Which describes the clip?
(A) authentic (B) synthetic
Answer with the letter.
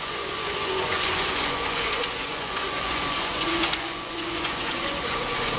B